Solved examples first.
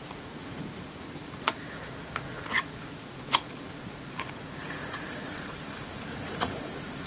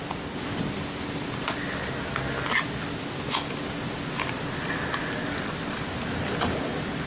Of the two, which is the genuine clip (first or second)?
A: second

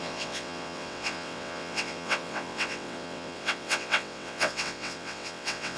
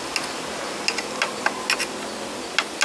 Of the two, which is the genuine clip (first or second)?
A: second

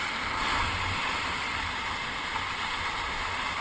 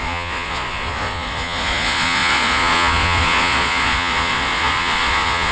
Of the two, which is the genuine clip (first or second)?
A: first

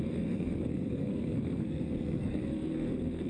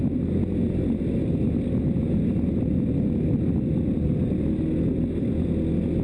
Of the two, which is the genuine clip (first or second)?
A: second